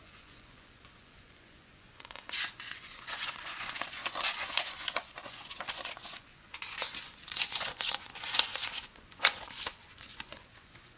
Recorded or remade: remade